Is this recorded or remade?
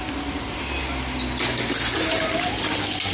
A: recorded